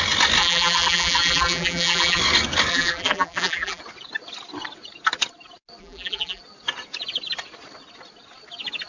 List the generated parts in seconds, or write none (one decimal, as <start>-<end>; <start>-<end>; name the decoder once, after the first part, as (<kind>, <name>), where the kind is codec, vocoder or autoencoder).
0.4-2.2 (vocoder, BigVGAN v2); 2.7-3.8; 5.8-6.4